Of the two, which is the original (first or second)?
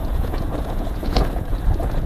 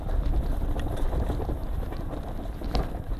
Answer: second